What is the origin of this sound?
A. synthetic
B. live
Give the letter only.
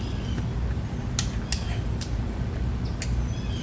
B